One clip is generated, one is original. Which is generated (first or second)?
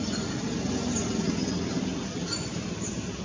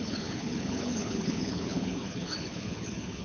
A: second